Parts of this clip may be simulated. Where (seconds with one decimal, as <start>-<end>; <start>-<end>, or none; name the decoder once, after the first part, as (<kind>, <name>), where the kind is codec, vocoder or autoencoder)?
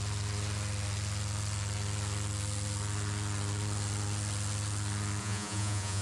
5.2-6.0 (vocoder, Vocos)